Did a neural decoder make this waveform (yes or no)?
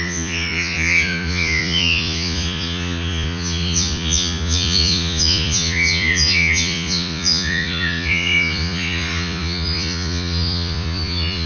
yes